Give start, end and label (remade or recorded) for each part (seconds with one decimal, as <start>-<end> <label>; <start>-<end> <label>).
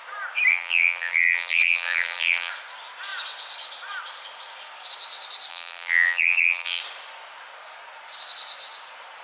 0.0-0.5 recorded; 0.5-2.5 remade; 2.5-5.5 recorded; 5.5-6.8 remade; 6.8-9.2 recorded